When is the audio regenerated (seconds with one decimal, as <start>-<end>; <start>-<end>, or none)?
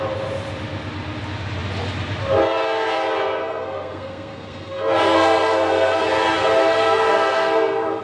3.4-6.0; 6.6-8.0